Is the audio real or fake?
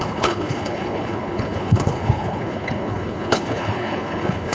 fake